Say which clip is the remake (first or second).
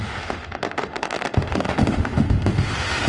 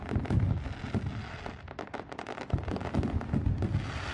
first